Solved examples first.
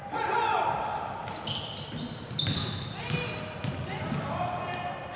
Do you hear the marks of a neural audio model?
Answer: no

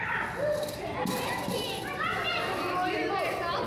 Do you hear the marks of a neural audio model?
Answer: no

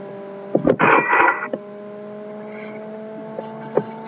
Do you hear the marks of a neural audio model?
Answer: no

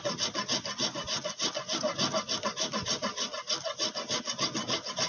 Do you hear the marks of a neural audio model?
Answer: no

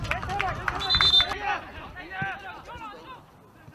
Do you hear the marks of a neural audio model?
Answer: no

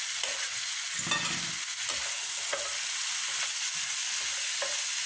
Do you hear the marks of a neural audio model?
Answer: no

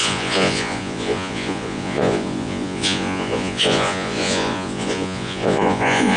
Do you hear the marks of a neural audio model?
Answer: yes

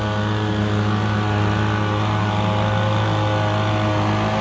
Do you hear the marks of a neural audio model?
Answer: no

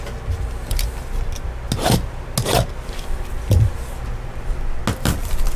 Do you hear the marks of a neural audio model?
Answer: no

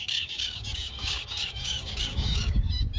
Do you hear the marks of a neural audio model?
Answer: yes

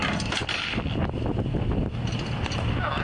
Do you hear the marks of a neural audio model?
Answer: no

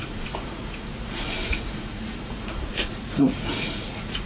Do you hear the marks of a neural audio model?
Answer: yes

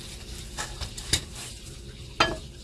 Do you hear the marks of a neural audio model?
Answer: no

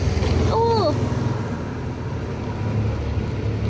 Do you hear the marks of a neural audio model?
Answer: no